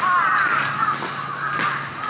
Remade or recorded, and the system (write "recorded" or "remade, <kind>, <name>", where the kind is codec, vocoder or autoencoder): recorded